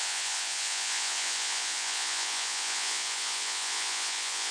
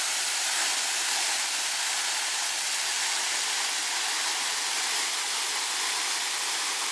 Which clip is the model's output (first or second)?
first